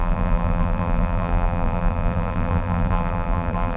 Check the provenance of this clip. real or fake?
fake